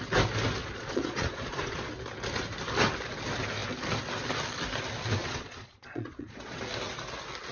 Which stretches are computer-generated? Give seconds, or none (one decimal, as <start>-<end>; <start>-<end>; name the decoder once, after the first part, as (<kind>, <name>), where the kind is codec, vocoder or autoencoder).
0.6-1.9 (vocoder, Vocos); 5.2-6.6